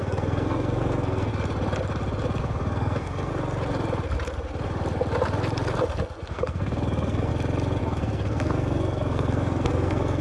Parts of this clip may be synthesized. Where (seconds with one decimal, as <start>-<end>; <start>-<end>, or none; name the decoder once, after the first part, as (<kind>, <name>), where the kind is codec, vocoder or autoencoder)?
0.0-1.3 (codec, SNAC); 2.4-3.3; 6.3-7.3; 7.8-10.2